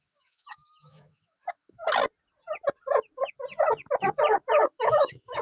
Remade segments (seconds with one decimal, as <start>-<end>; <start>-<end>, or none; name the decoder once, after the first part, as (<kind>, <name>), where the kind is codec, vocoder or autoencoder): 0.0-1.8 (autoencoder, DAC-VAE); 4.7-5.4